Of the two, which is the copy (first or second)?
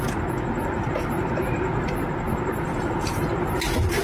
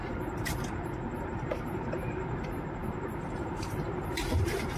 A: second